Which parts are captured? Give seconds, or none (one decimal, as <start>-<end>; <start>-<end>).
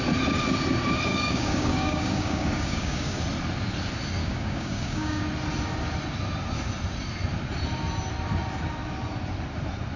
0.0-1.1; 3.2-4.2; 5.2-10.0